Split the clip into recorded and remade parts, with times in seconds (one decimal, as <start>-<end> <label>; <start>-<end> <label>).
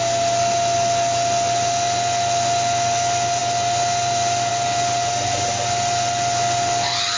0.0-7.2 recorded